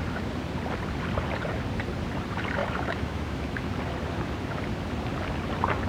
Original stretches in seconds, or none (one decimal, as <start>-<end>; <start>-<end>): 0.0-2.6; 3.7-5.9